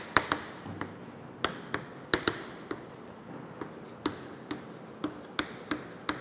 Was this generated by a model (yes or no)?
no